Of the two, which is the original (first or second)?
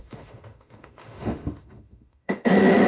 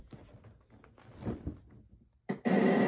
second